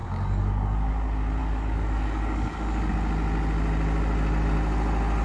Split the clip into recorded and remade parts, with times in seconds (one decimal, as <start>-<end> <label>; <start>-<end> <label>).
0.0-0.9 remade; 0.9-1.4 recorded; 1.4-2.9 remade; 2.9-5.2 recorded